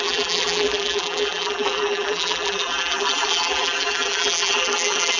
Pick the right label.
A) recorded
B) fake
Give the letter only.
B